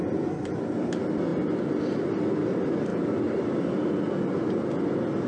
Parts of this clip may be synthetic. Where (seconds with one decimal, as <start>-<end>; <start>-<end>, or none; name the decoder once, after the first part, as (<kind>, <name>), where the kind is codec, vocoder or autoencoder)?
none